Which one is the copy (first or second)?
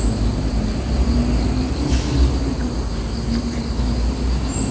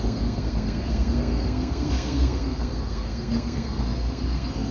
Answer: second